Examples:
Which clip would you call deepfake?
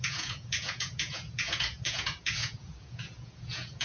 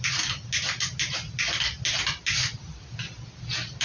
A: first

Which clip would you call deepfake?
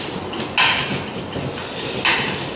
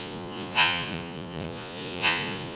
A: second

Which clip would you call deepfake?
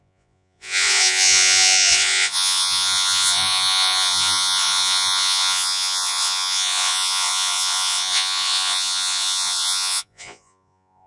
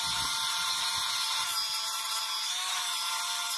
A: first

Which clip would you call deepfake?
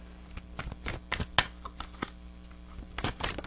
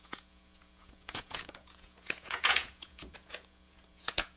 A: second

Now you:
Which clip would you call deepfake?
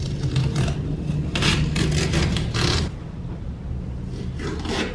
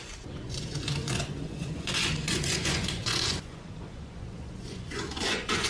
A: second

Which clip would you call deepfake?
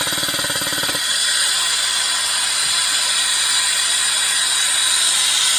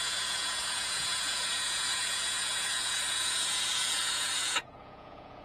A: second